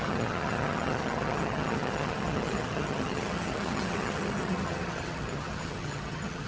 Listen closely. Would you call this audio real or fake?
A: fake